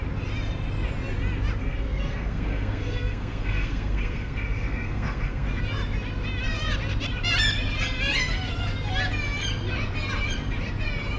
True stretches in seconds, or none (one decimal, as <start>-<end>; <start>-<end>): 0.0-1.6; 5.6-11.2